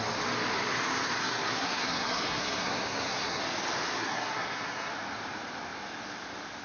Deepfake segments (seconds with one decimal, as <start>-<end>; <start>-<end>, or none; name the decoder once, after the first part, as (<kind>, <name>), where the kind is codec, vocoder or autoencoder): 1.2-3.4 (codec, SNAC); 4.0-4.9